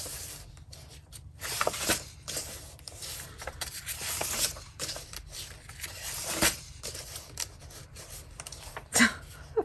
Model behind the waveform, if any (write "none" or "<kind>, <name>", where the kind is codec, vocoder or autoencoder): vocoder, BigVGAN v2